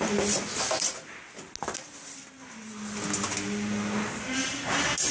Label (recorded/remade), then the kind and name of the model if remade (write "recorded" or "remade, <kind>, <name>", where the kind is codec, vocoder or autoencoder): recorded